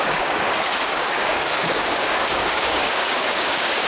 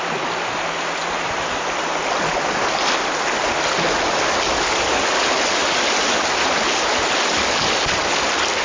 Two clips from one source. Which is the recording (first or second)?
second